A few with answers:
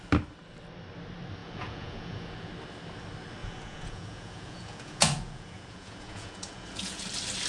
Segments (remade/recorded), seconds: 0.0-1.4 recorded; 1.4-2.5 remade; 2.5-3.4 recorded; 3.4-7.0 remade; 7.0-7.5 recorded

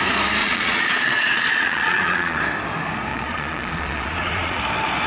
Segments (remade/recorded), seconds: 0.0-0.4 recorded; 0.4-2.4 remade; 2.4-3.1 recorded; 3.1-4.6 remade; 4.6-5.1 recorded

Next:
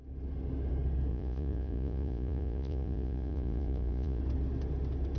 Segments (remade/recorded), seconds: 0.0-1.1 recorded; 1.1-4.2 remade; 4.2-5.2 recorded